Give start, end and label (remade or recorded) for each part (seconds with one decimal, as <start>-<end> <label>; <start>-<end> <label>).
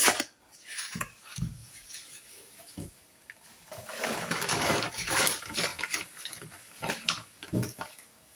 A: 0.0-8.4 remade